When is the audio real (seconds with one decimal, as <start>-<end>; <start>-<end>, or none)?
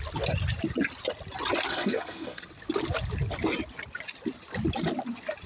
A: 0.0-1.7; 2.4-5.5